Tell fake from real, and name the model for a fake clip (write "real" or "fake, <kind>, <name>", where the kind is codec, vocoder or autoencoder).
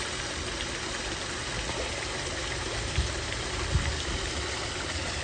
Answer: real